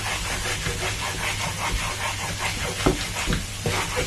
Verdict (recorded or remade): recorded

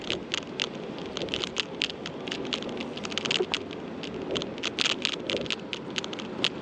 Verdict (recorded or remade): recorded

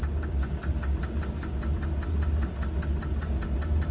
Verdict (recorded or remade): recorded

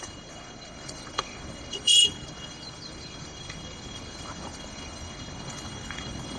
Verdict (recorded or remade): remade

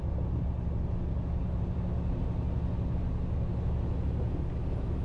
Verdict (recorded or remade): recorded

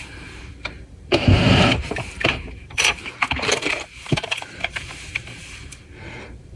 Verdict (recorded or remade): remade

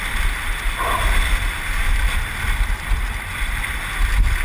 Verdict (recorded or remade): remade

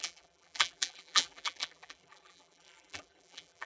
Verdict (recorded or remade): remade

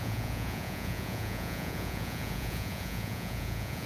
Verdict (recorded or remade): remade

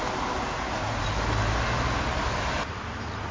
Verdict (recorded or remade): recorded